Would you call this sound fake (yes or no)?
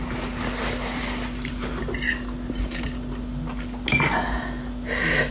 no